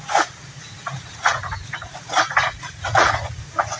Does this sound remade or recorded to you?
remade